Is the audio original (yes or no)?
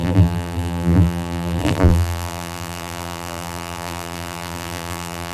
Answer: no